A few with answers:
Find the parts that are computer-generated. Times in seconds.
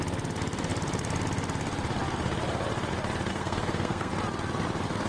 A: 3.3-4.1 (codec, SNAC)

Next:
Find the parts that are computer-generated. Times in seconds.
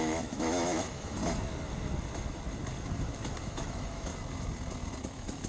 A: 0.0-1.2 (autoencoder, DAC-VAE); 3.4-4.1; 5.0-5.5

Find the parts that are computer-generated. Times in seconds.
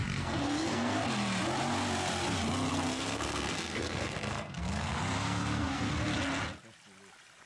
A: 0.0-1.0 (codec, SNAC); 2.7-5.9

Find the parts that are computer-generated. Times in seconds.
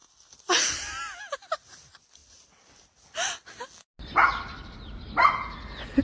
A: none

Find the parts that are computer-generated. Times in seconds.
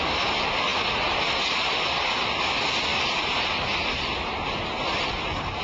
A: none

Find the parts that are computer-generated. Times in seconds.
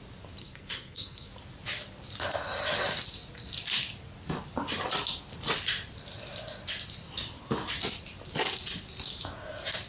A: 0.4-1.3 (codec, SNAC)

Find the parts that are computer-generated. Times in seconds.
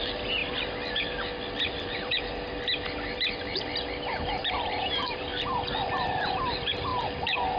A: 0.0-0.4 (vocoder, BigVGAN v2); 1.7-2.1; 4.4-5.3; 6.0-6.9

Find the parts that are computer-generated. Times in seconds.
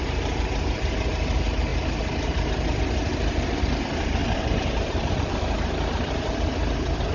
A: 4.2-5.3 (vocoder, BigVGAN v2)